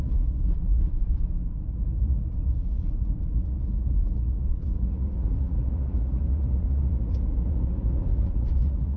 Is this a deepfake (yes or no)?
yes